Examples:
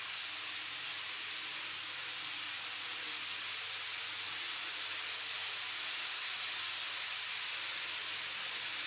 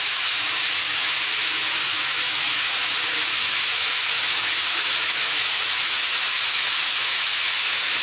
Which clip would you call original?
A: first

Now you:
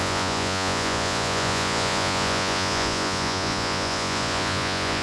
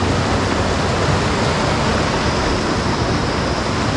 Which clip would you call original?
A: second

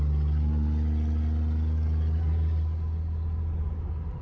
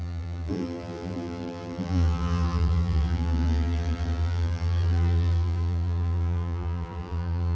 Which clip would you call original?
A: first